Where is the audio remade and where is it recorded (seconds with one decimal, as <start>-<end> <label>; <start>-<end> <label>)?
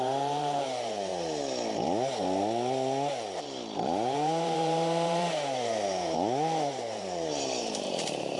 0.0-1.1 remade; 1.1-3.4 recorded; 3.4-8.4 remade